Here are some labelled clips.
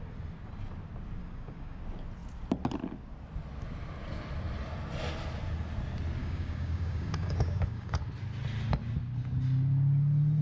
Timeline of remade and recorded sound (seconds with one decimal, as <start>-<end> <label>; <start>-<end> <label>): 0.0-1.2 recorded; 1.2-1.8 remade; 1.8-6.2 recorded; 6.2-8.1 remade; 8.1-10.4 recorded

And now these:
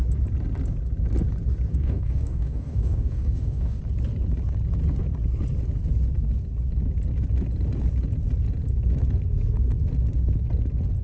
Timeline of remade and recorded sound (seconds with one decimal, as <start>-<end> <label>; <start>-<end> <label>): 0.0-1.7 recorded; 1.7-3.8 remade; 3.8-11.0 recorded

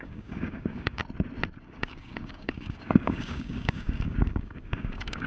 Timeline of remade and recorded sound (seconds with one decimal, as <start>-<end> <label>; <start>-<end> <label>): 0.0-1.0 remade; 1.0-1.6 recorded; 1.6-5.3 remade

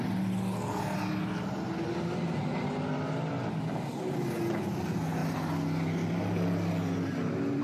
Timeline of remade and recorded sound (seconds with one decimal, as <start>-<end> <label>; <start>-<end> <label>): 0.0-7.6 recorded

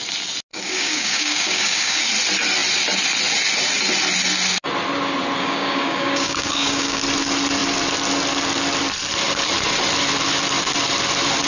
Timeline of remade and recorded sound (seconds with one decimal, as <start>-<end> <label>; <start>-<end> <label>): 0.0-0.5 recorded; 0.5-2.1 remade; 2.1-5.4 recorded; 5.4-7.0 remade; 7.0-11.5 recorded

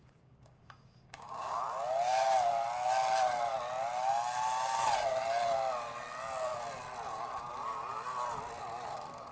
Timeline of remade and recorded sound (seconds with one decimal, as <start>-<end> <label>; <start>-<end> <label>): 0.0-1.6 remade; 1.6-9.3 recorded